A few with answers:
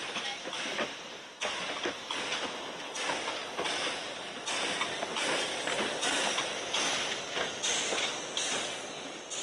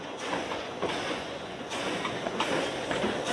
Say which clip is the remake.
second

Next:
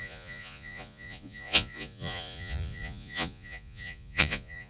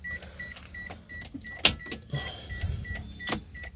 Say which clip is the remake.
first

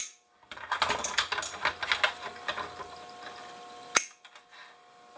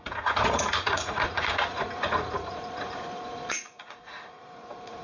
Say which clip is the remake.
second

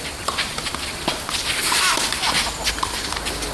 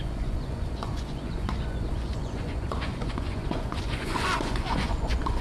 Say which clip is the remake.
second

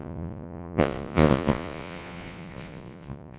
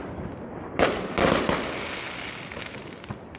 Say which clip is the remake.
first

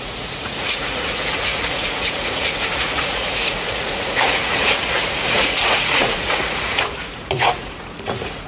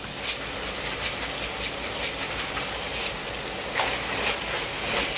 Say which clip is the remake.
first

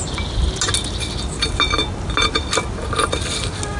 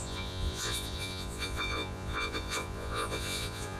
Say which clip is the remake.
second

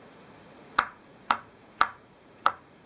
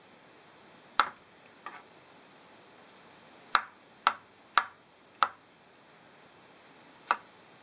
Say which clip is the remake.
first